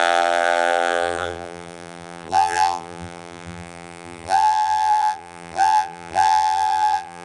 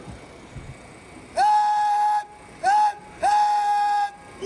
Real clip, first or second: second